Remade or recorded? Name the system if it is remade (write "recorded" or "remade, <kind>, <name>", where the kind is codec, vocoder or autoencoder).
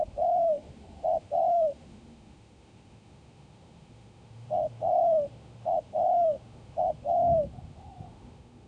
remade, autoencoder, DAC-VAE